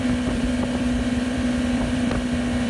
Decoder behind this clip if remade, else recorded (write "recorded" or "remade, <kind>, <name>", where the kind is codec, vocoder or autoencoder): remade, vocoder, BigVGAN v2